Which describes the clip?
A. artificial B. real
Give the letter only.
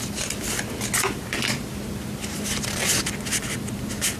B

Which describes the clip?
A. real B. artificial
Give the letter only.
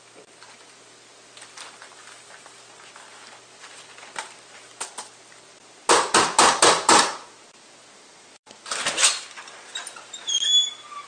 A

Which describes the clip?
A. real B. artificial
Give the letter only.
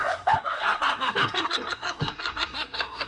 B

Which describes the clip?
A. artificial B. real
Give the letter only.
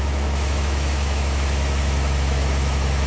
A